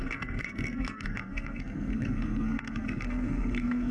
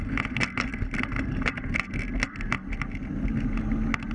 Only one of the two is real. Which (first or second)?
second